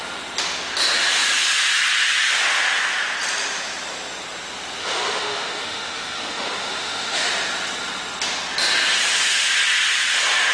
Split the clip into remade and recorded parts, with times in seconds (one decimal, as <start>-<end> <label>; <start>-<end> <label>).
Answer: 0.0-4.8 recorded; 4.8-7.3 remade; 7.3-10.5 recorded